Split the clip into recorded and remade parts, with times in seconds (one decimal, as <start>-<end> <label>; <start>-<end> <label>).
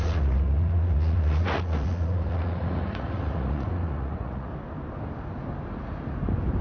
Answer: 0.0-4.5 remade; 4.5-6.6 recorded